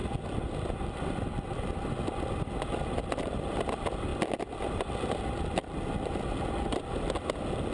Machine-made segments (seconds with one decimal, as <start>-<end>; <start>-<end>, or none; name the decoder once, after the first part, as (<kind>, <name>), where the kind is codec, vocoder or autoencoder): none